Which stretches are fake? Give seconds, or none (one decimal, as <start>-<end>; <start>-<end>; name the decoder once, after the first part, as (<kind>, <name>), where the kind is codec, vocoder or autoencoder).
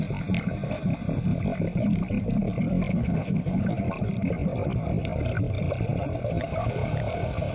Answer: 2.9-3.6 (codec, HILCodec)